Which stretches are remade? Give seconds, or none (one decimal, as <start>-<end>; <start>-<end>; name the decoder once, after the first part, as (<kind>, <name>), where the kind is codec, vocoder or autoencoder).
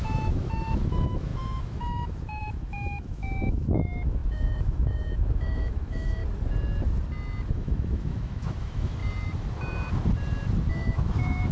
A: 0.0-6.2 (autoencoder, DAC-VAE); 7.5-9.0; 10.7-11.5